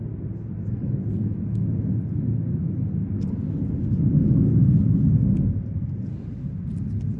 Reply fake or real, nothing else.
real